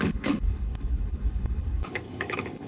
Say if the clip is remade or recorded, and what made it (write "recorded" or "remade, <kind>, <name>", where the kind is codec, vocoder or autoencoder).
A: remade, codec, HILCodec